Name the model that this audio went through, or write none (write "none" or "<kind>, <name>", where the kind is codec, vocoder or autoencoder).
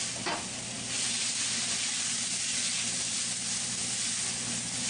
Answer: none